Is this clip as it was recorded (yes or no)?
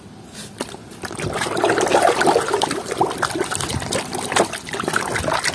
yes